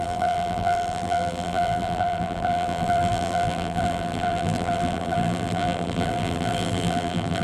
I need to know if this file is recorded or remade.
remade